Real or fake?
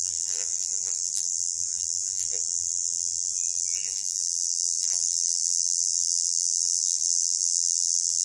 fake